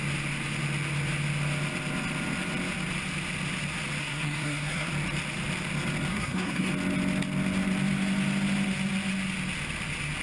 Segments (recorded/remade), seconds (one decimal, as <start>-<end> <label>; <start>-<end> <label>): 0.0-4.0 recorded; 4.0-4.9 remade; 4.9-6.1 recorded; 6.1-6.7 remade; 6.7-10.2 recorded